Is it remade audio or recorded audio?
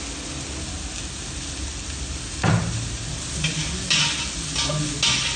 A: recorded